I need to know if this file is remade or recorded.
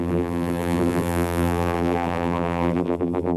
remade